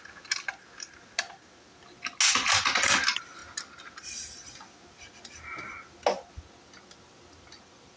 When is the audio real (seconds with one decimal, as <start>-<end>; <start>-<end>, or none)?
0.0-8.0